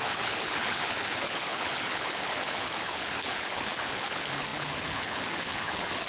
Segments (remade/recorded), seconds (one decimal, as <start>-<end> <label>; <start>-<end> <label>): 0.0-6.1 remade